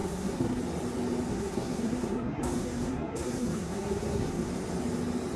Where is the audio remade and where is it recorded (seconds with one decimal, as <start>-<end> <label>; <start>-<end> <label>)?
0.0-0.6 remade; 0.6-1.3 recorded; 1.3-4.5 remade; 4.5-5.4 recorded